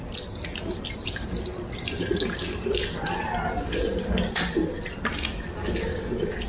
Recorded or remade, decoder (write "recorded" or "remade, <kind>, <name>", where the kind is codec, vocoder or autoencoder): recorded